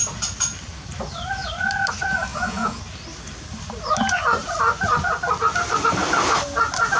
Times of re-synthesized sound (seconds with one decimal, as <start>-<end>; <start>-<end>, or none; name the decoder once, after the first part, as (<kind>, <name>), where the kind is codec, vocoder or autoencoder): 2.3-2.8 (vocoder, Vocos)